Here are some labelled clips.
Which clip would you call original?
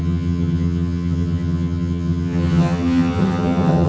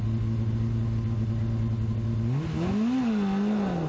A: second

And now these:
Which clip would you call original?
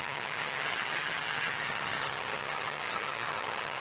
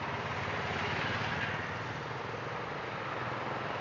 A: second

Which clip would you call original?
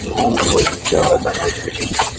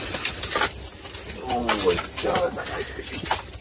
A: second